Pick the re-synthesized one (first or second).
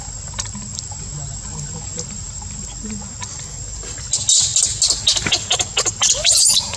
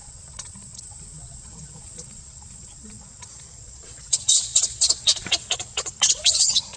second